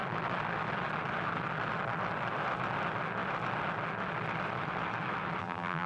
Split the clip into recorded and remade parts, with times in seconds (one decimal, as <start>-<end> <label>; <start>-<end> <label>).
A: 0.0-5.4 recorded; 5.4-5.9 remade